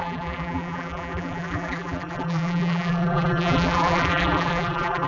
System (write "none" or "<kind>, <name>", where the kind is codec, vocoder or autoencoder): vocoder, BigVGAN v2